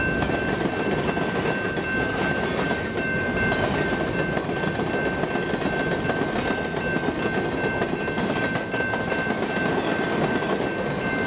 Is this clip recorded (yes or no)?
yes